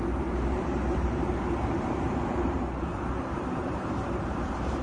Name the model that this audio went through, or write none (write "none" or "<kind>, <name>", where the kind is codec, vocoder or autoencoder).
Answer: vocoder, BigVGAN v2